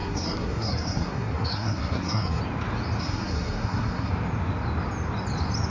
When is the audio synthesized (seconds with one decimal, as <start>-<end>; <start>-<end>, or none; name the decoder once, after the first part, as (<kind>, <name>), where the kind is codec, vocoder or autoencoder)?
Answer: 0.0-2.4 (codec, SNAC); 3.0-4.1